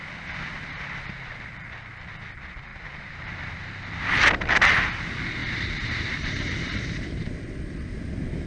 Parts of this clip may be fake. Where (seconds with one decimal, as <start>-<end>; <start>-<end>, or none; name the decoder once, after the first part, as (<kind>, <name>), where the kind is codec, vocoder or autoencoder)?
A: 2.7-3.5 (vocoder, BigVGAN v2); 5.4-7.5